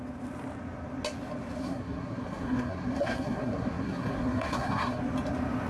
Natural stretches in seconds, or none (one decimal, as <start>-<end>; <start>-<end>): 0.0-1.6; 5.0-5.7